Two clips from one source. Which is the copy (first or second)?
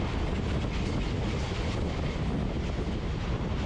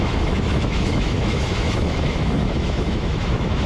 second